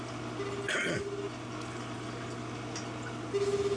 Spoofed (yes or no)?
no